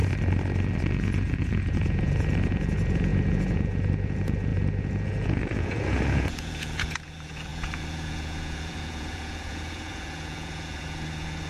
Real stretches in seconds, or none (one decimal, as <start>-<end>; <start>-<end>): 0.0-0.9